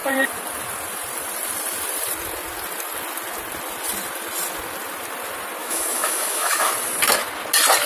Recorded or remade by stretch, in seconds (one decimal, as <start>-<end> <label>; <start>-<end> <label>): 0.0-5.6 recorded; 5.6-6.7 remade; 6.7-7.9 recorded